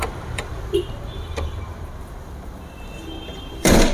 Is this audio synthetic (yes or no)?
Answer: yes